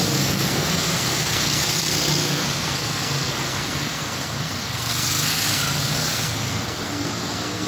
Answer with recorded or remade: remade